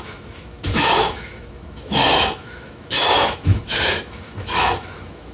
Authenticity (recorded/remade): remade